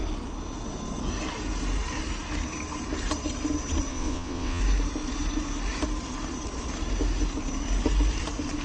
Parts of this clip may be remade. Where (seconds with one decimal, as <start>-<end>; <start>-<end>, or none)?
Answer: 3.9-4.6